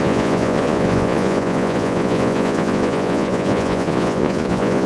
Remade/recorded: remade